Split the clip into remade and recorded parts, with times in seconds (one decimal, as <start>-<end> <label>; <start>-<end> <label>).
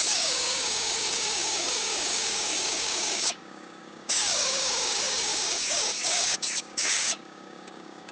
0.0-8.1 remade